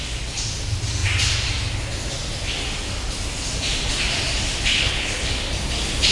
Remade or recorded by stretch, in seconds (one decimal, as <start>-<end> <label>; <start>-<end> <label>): 0.0-4.7 recorded; 4.7-5.2 remade; 5.2-6.1 recorded